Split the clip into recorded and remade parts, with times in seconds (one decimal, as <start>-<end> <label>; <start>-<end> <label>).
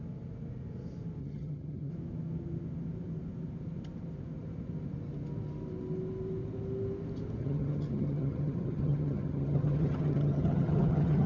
0.0-1.2 recorded; 1.2-1.9 remade; 1.9-7.4 recorded; 7.4-11.3 remade